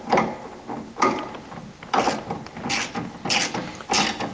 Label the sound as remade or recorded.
recorded